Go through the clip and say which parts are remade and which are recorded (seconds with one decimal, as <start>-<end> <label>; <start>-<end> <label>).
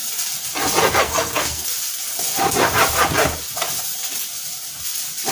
0.0-1.0 recorded; 1.0-1.7 remade; 1.7-5.3 recorded